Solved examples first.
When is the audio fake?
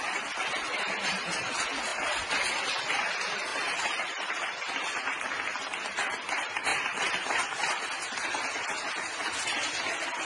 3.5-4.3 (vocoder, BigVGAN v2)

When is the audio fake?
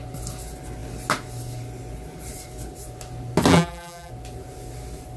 3.5-4.1 (vocoder, BigVGAN v2)